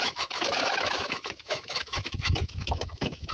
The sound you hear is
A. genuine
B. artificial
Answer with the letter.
B